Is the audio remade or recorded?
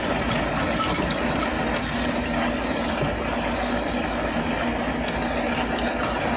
recorded